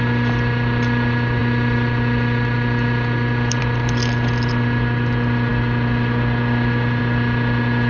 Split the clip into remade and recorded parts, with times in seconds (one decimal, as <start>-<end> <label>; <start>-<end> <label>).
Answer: 0.0-7.9 recorded